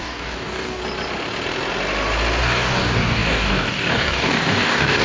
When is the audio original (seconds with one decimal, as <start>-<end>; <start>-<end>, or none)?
0.8-2.4